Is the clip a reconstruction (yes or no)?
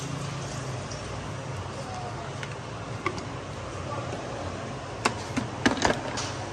no